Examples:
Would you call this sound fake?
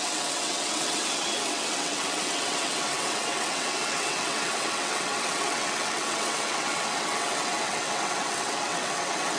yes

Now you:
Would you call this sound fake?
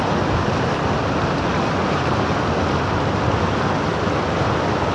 no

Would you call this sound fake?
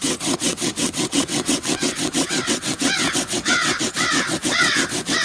yes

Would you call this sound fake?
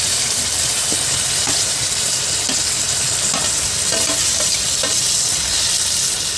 no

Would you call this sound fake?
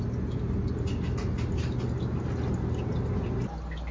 no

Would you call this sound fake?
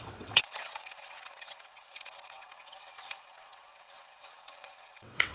yes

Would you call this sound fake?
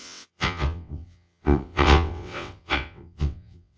yes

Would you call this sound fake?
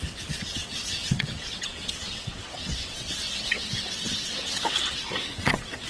yes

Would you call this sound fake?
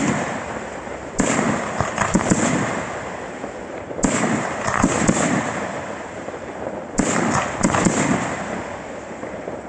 no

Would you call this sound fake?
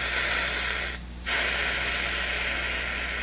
no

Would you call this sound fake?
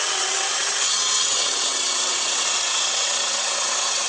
yes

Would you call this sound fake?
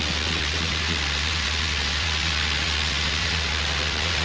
yes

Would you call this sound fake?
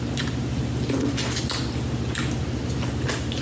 no